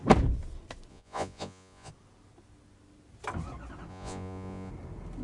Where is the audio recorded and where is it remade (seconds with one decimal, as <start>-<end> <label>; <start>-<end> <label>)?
0.0-0.9 recorded; 0.9-1.9 remade; 1.9-3.9 recorded; 3.9-4.7 remade; 4.7-5.2 recorded